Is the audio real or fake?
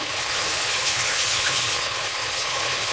fake